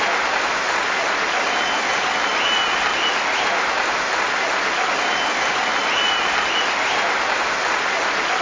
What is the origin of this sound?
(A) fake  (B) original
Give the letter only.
B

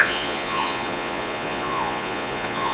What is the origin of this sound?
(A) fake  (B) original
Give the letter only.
A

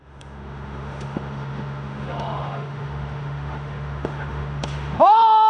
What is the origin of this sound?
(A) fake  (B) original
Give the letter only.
A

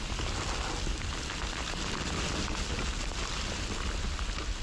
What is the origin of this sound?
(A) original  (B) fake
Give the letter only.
A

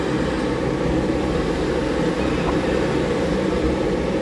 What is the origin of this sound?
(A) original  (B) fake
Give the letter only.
A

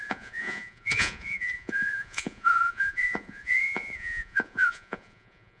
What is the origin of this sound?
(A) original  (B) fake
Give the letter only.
B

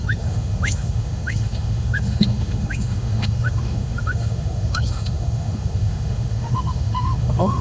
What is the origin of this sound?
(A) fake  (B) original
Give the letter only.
A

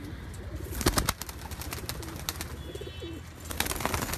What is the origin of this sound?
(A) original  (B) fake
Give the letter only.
A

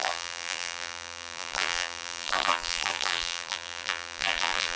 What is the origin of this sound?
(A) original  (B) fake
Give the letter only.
B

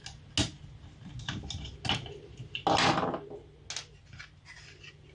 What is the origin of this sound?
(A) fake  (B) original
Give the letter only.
B